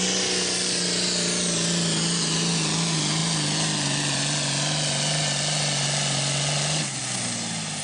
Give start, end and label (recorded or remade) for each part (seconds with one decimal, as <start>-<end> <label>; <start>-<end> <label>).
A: 0.0-7.8 recorded